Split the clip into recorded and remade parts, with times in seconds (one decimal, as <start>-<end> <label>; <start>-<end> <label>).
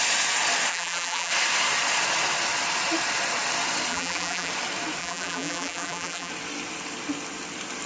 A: 0.0-0.7 recorded; 0.7-1.3 remade; 1.3-3.9 recorded; 3.9-4.5 remade; 4.5-5.0 recorded; 5.0-6.3 remade; 6.3-7.9 recorded